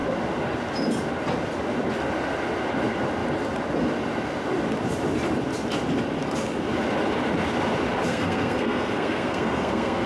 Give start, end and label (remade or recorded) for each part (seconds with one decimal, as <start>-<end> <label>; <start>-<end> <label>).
0.0-8.1 recorded; 8.1-10.1 remade